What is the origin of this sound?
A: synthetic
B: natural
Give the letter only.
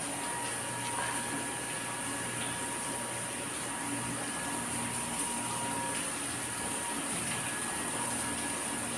B